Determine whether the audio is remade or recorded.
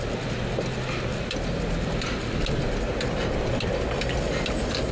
recorded